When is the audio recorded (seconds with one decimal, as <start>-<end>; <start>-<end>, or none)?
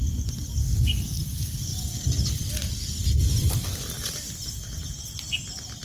0.0-0.6; 1.2-5.8